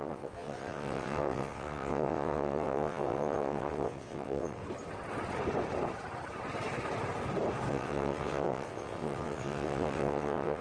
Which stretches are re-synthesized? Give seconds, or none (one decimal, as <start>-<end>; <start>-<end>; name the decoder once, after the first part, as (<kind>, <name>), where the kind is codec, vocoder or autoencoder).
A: 0.0-4.6 (vocoder, WaveNeXt); 7.7-10.6